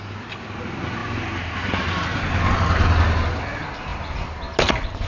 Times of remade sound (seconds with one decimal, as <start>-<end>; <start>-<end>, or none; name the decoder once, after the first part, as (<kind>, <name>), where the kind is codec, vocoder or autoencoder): none